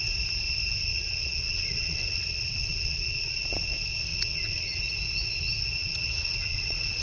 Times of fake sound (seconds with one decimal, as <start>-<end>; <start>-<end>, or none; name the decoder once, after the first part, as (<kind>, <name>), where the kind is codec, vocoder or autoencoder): 0.9-3.4 (vocoder, WaveNeXt); 4.1-4.8; 5.8-7.0